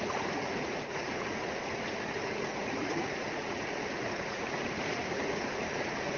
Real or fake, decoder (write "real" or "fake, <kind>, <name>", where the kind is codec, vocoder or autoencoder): fake, vocoder, Vocos